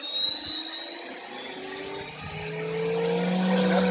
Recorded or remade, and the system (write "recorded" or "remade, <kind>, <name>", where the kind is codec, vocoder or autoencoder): recorded